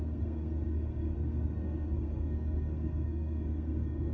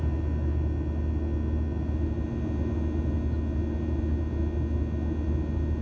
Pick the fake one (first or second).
first